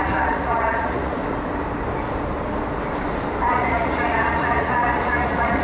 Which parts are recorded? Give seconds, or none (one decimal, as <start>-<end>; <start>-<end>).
1.2-3.5